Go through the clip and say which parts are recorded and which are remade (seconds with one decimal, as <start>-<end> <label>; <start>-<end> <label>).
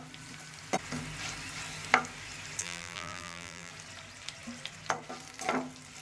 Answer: 0.0-2.6 recorded; 2.6-3.7 remade; 3.7-6.0 recorded